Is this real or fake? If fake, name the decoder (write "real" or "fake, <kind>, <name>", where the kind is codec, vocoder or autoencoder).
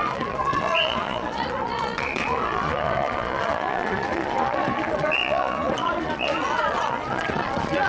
fake, vocoder, Vocos